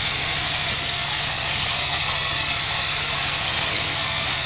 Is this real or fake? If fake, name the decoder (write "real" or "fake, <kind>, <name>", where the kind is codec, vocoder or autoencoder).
fake, codec, SNAC